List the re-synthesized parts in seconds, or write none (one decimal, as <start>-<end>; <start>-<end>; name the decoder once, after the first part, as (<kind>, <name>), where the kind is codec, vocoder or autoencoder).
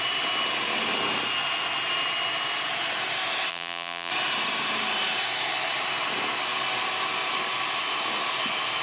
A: 3.5-4.1 (vocoder, BigVGAN v2)